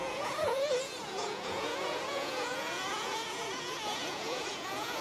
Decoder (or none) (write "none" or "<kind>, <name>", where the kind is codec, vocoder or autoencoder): vocoder, Vocos